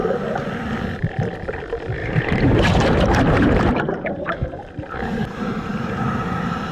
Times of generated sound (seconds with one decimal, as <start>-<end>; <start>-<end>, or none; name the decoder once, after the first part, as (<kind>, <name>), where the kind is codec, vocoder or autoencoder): 2.0-6.0 (vocoder, BigVGAN v2)